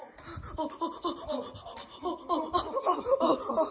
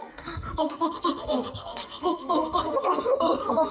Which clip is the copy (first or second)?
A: second